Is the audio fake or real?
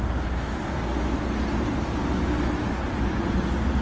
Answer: real